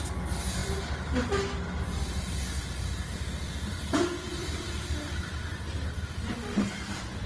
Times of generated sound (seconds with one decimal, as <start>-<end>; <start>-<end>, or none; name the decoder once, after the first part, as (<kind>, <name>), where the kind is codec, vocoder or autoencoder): 4.4-5.3 (vocoder, BigVGAN v2)